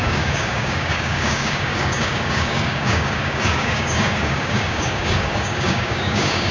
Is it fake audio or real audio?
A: fake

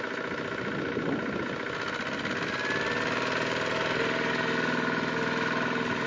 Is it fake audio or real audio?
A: real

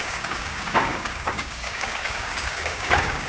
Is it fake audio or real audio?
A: fake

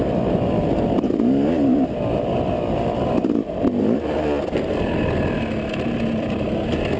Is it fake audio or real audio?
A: real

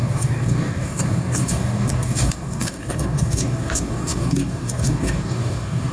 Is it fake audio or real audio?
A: fake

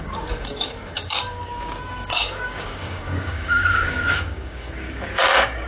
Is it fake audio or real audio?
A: fake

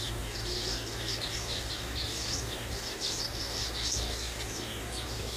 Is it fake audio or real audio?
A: fake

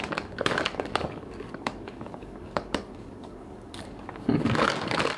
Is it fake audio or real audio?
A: fake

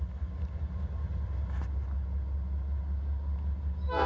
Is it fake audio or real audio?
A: real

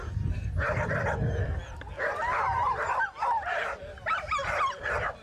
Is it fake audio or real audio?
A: real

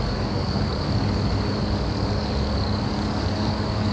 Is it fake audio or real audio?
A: fake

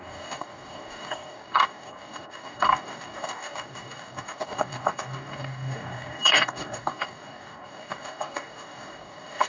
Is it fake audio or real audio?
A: fake